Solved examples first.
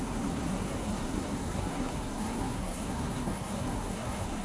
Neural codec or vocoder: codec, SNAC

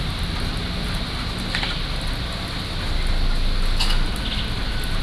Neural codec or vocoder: none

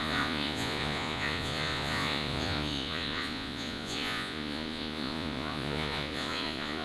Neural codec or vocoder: vocoder, Vocos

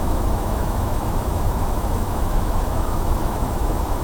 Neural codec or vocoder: autoencoder, DAC-VAE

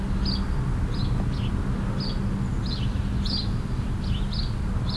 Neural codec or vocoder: none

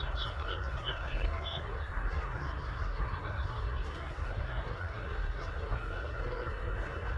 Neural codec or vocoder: codec, SNAC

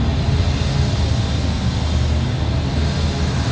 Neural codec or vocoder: none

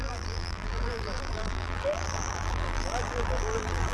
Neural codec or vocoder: vocoder, BigVGAN v2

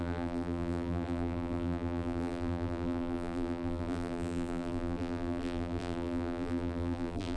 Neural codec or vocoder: vocoder, BigVGAN v2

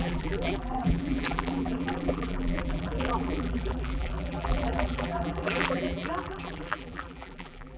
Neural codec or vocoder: vocoder, BigVGAN v2